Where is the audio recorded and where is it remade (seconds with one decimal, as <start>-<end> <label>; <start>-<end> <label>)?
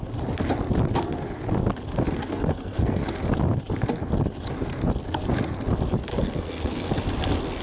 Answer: 0.0-2.2 recorded; 2.2-3.0 remade; 3.0-6.1 recorded; 6.1-6.9 remade; 6.9-7.6 recorded